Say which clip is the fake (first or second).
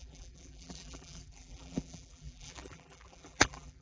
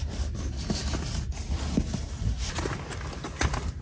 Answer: first